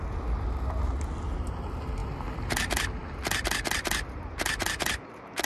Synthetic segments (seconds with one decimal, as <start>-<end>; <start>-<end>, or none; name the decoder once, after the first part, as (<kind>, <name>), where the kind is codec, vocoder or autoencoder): none

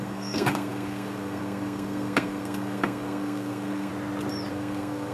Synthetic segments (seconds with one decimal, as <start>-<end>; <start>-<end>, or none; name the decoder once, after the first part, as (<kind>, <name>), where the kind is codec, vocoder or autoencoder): 0.0-3.9 (codec, SNAC); 4.5-5.1

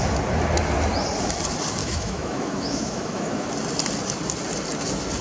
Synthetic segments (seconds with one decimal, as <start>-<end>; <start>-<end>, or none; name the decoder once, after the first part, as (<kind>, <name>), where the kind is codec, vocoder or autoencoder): 1.8-3.5 (autoencoder, DAC-VAE)

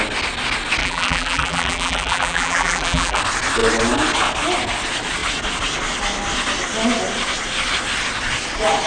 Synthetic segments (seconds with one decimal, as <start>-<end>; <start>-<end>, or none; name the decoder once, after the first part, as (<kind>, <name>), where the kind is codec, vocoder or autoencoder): 0.8-3.2 (vocoder, BigVGAN v2)

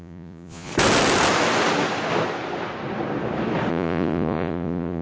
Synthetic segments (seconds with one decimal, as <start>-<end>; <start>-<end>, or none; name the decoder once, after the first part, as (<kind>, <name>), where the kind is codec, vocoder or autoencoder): 0.0-0.7 (vocoder, Vocos); 3.7-5.0

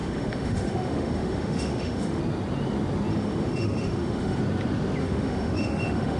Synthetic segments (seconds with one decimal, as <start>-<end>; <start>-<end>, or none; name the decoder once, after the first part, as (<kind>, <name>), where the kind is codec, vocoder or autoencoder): 0.0-2.2 (autoencoder, DAC-VAE); 3.1-4.4; 5.0-6.2

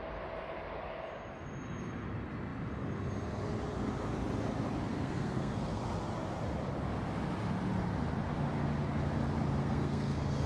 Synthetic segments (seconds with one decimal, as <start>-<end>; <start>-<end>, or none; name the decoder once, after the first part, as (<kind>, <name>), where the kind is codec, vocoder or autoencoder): 4.9-5.8 (codec, SNAC); 9.6-10.5